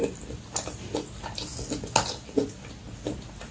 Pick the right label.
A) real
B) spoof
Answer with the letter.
A